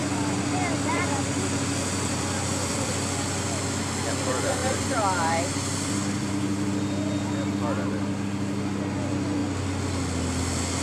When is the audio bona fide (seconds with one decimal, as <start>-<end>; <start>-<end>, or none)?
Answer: 2.9-4.6; 6.3-10.8